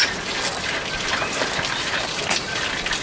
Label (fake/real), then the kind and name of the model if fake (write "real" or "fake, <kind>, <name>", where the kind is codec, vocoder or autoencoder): real